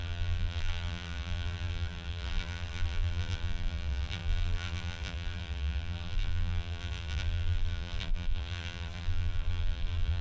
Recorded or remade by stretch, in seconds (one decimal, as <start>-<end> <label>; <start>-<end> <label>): 0.0-10.2 remade